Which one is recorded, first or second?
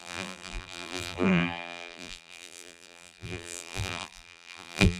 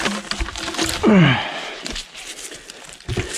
second